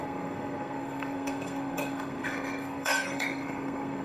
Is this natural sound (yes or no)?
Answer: no